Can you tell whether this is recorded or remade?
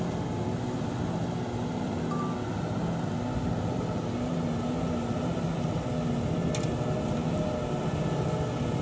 recorded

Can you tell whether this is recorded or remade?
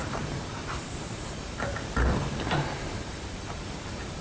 remade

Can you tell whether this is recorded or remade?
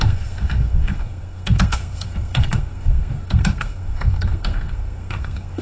remade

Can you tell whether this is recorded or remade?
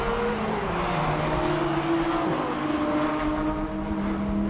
recorded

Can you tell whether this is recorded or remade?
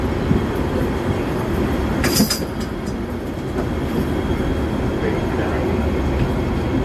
recorded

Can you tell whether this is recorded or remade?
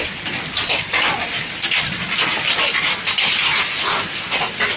recorded